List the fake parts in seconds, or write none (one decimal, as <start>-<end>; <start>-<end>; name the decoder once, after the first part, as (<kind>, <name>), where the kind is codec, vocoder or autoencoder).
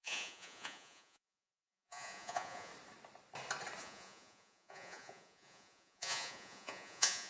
0.0-2.7 (vocoder, Vocos); 3.8-7.3